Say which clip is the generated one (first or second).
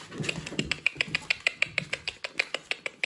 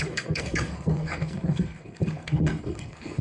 second